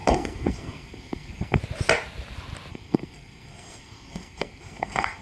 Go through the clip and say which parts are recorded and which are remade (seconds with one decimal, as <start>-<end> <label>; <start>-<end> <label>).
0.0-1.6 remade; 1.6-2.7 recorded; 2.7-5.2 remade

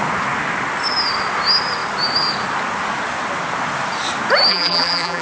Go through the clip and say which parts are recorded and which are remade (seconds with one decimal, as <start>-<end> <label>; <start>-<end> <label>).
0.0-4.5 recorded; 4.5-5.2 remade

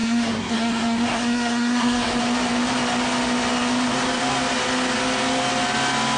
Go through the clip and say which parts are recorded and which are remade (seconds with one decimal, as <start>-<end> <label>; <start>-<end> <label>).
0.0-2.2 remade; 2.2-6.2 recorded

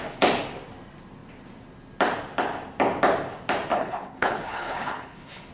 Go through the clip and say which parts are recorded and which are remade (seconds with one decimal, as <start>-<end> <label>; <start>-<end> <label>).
0.0-3.7 recorded; 3.7-5.5 remade

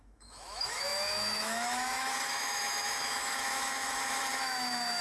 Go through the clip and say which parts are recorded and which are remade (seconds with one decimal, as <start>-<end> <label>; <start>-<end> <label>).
0.0-5.0 remade